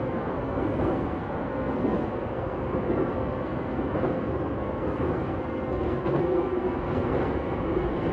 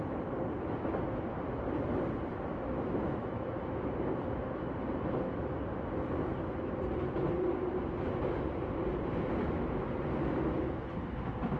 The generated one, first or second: first